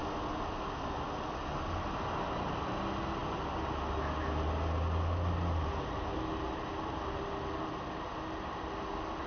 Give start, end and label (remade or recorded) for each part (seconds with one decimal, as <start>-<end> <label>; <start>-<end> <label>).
0.0-9.3 recorded

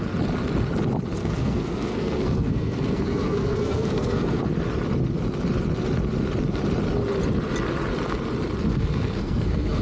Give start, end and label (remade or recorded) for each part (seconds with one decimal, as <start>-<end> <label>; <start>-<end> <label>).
0.0-1.2 recorded; 1.2-4.4 remade; 4.4-8.7 recorded; 8.7-9.8 remade

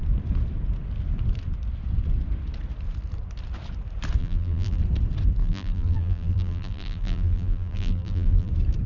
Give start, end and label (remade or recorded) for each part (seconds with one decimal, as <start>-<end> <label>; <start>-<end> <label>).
0.0-4.2 recorded; 4.2-4.8 remade; 4.8-5.4 recorded; 5.4-8.5 remade; 8.5-8.9 recorded

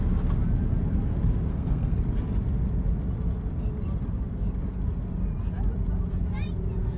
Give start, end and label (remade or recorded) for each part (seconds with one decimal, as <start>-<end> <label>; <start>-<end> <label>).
0.0-1.5 recorded; 1.5-2.0 remade; 2.0-7.0 recorded

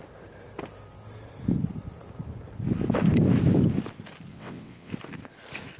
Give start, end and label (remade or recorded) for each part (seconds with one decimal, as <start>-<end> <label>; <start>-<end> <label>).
0.0-4.3 recorded; 4.3-4.9 remade; 4.9-5.8 recorded

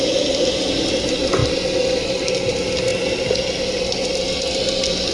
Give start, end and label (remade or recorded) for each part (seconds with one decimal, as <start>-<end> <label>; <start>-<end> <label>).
0.0-5.1 recorded

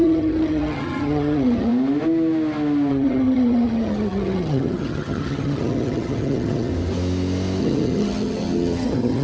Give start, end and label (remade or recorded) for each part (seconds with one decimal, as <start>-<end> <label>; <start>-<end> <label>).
0.0-1.7 remade; 1.7-2.9 recorded; 2.9-6.7 remade; 6.7-7.6 recorded; 7.6-9.2 remade

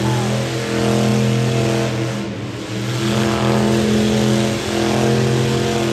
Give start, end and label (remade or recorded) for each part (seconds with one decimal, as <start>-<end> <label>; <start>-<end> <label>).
0.0-5.9 recorded